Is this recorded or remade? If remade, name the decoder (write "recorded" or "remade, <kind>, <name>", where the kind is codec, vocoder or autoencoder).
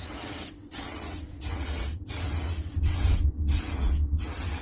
remade, vocoder, WaveNeXt